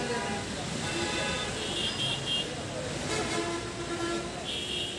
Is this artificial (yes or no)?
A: no